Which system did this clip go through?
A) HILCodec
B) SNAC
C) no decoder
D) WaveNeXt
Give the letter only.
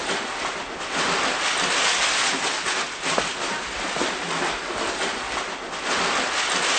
C